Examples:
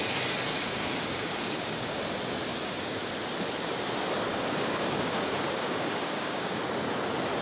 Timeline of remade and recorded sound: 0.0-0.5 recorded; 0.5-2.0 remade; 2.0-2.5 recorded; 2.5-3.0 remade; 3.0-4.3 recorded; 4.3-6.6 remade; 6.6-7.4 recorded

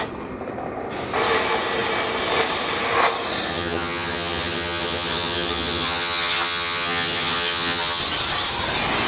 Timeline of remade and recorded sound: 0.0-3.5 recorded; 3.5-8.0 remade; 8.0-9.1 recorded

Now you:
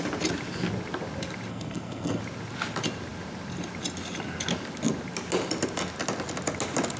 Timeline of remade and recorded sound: 0.0-1.5 recorded; 1.5-2.2 remade; 2.2-7.0 recorded